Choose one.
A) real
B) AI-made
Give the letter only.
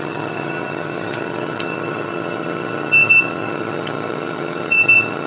B